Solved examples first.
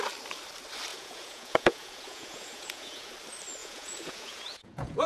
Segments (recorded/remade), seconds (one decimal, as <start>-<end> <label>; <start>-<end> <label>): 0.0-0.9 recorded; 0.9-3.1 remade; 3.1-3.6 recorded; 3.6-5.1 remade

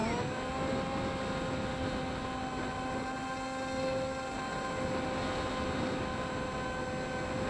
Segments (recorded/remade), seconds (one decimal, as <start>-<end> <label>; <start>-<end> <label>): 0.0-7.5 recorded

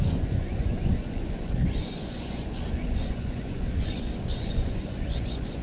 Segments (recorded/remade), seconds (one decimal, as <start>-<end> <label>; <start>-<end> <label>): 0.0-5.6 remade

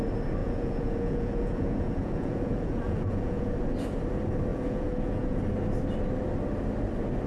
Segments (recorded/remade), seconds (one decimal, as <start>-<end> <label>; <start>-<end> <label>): 0.0-0.4 recorded; 0.4-3.5 remade; 3.5-4.5 recorded; 4.5-5.4 remade; 5.4-7.3 recorded

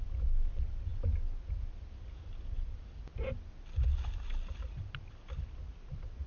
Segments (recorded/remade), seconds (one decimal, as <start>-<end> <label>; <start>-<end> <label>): 0.0-6.3 recorded

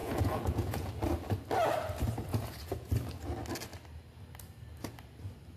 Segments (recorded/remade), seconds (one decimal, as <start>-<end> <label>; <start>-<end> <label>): 0.0-0.9 remade; 0.9-2.3 recorded; 2.3-2.9 remade; 2.9-5.6 recorded

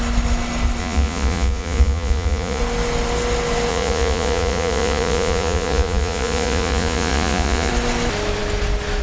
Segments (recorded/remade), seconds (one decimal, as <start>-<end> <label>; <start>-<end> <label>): 0.0-0.8 recorded; 0.8-2.6 remade; 2.6-3.7 recorded; 3.7-7.7 remade; 7.7-9.0 recorded